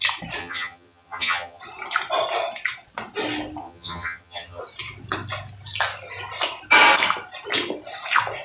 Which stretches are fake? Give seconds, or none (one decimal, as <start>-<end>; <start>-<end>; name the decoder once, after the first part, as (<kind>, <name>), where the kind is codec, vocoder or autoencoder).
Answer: 0.4-1.6 (vocoder, HiFi-GAN); 3.6-4.6